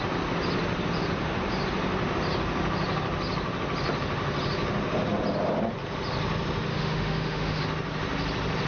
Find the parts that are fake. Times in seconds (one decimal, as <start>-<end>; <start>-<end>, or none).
6.7-7.6